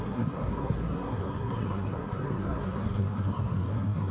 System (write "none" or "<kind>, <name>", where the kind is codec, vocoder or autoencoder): codec, SNAC